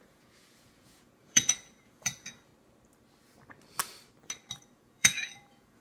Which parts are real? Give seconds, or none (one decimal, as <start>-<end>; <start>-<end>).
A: 2.5-4.6